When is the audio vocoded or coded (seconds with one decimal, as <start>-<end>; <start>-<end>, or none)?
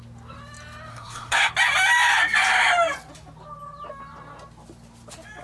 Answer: 0.9-1.5